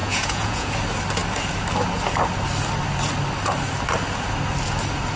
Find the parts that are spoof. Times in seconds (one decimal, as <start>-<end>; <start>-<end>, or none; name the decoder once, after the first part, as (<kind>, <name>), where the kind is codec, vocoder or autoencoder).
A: 0.0-0.7 (vocoder, Vocos)